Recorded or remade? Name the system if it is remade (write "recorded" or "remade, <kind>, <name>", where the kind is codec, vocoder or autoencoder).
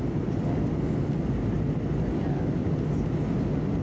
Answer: recorded